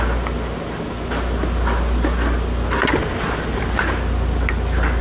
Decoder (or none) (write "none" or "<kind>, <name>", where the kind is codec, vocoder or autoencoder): none